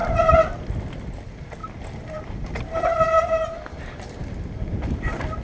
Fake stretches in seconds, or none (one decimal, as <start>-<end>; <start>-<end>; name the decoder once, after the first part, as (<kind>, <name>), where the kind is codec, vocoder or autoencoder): none